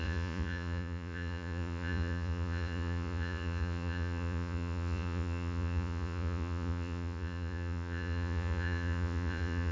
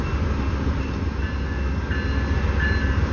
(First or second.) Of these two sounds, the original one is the second